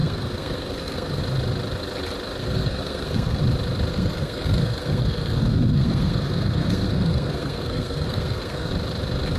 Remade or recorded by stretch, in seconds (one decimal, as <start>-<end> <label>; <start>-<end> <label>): 0.0-1.2 remade; 1.2-2.4 recorded; 2.4-3.4 remade; 3.4-3.9 recorded; 3.9-8.7 remade; 8.7-9.4 recorded